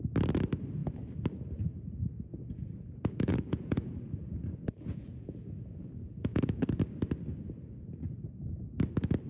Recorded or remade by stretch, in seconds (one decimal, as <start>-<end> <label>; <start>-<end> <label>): 0.0-2.3 recorded; 2.3-6.6 remade; 6.6-9.3 recorded